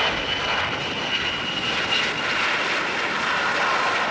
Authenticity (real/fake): real